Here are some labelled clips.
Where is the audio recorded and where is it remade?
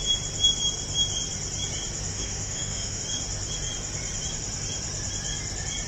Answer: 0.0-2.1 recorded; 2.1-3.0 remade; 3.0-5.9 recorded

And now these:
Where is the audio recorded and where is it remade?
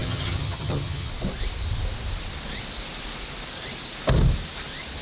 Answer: 0.0-1.1 remade; 1.1-5.0 recorded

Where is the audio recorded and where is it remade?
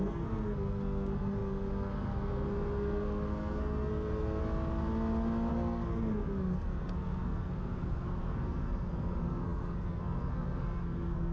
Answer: 0.0-4.4 remade; 4.4-5.5 recorded; 5.5-11.3 remade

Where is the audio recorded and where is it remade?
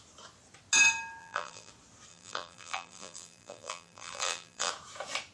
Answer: 0.0-1.2 recorded; 1.2-1.7 remade; 1.7-2.1 recorded; 2.1-4.7 remade; 4.7-5.3 recorded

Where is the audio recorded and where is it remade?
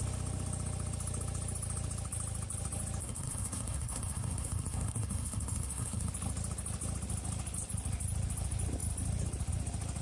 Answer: 0.0-3.0 recorded; 3.0-6.1 remade; 6.1-10.0 recorded